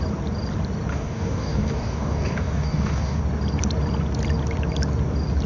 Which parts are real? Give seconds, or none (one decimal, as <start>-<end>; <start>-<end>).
0.0-0.9; 3.2-5.5